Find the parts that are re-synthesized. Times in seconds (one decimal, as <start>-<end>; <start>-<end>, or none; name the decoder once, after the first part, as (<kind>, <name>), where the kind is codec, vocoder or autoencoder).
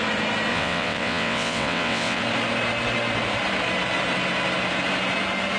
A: 0.5-2.2 (vocoder, WaveNeXt)